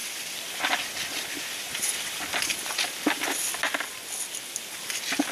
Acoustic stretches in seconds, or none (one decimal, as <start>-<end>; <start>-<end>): 3.2-5.3